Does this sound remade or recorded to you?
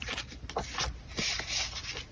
recorded